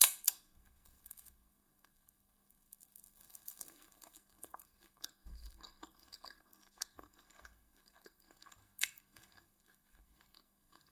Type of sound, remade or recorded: remade